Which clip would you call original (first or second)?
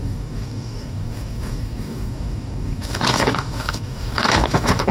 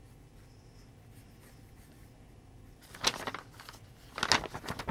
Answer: second